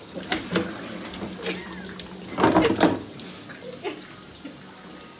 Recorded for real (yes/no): yes